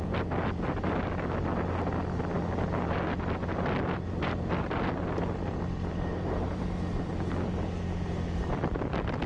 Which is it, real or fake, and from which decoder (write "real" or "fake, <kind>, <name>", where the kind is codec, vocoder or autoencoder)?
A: real